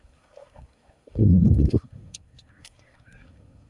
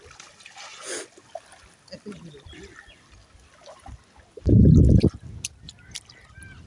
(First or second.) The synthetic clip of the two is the first